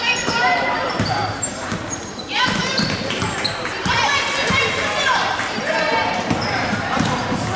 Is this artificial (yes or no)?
yes